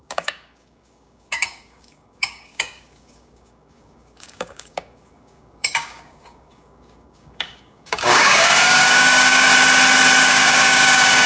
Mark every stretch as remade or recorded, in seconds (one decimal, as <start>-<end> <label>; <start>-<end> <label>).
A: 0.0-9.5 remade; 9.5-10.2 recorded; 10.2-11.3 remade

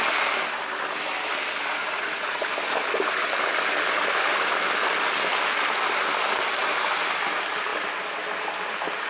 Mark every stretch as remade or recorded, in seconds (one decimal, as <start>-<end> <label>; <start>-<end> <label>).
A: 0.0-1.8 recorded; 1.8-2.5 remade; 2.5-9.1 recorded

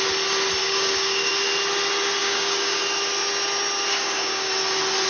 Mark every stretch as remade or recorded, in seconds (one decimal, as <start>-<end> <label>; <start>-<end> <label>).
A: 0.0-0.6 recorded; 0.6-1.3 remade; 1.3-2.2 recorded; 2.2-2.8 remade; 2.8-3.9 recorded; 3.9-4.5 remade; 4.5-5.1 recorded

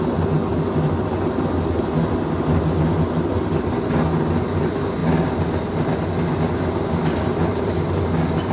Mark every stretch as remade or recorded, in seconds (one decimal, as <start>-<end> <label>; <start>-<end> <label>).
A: 0.0-8.5 recorded

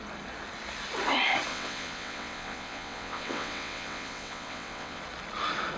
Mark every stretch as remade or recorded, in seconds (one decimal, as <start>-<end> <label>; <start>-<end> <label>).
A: 0.0-1.5 recorded; 1.5-5.0 remade; 5.0-5.8 recorded

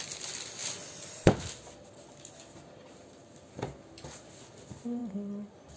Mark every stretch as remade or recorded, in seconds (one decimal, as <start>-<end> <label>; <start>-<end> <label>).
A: 0.0-5.8 recorded

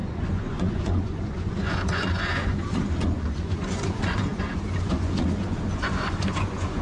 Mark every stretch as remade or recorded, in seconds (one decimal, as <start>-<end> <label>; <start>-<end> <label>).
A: 0.0-6.8 remade